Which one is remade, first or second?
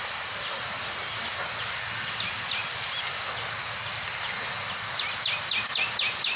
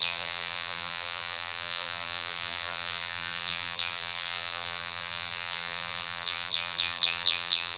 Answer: second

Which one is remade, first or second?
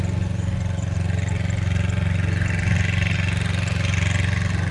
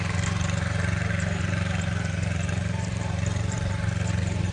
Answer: second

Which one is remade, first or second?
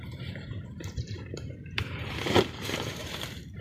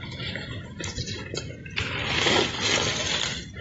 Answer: first